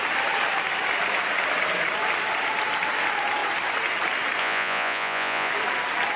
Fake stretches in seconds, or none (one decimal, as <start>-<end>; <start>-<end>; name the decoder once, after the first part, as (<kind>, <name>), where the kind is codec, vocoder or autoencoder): 4.4-5.5 (vocoder, Vocos)

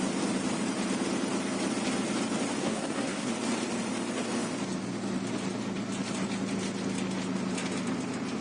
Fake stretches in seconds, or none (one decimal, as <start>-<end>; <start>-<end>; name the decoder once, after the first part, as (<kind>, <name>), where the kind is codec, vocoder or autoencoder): 2.6-3.3 (codec, SNAC)

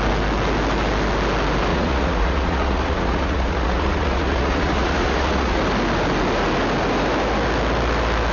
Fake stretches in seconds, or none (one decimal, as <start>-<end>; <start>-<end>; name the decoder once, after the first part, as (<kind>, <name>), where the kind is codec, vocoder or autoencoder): 1.7-5.6 (vocoder, Vocos)

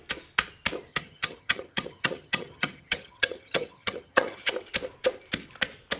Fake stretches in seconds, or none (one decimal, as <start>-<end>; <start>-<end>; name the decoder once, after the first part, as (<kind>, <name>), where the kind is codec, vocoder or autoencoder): 0.9-4.5 (vocoder, HiFi-GAN)

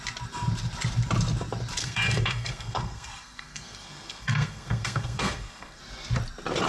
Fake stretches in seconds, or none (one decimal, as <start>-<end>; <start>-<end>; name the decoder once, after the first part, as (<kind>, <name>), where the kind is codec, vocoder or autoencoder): 1.8-5.8 (codec, SNAC)

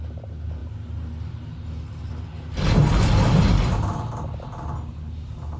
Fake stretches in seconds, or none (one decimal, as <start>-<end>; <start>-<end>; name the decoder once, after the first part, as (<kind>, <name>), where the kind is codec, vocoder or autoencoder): none

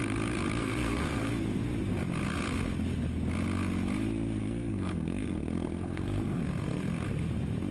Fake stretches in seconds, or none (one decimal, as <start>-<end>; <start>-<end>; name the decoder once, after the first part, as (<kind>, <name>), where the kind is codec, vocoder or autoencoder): 0.6-1.3 (codec, SNAC); 4.4-6.4